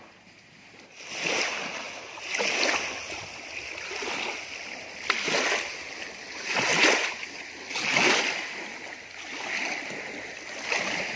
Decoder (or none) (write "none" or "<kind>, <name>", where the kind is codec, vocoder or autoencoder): none